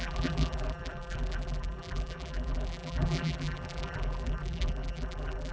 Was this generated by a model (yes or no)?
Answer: yes